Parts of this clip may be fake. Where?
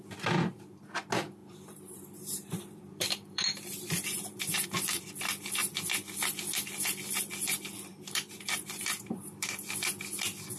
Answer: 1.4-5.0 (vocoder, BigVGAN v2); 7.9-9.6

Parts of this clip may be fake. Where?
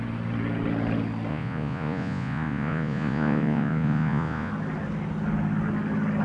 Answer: 1.3-4.5 (vocoder, Vocos)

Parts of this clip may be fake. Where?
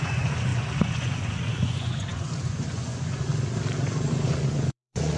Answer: 0.0-3.3 (vocoder, Vocos); 4.3-5.2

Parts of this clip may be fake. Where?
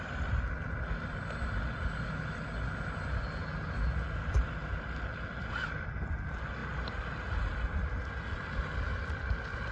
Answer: none